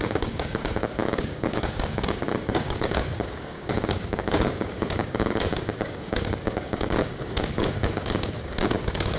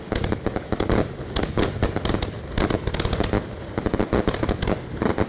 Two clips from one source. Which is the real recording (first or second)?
second